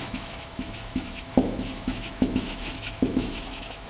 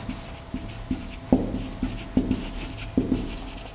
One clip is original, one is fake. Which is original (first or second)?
second